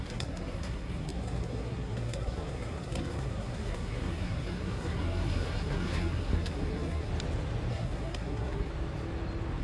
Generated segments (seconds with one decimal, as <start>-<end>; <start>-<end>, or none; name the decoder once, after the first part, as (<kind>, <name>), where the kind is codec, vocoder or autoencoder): 0.0-7.1 (codec, SNAC); 7.7-8.7